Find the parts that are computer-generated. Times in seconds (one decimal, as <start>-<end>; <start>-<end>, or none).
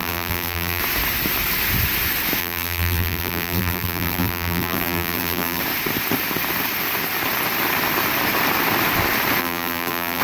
0.0-0.8; 2.4-5.6; 9.4-10.2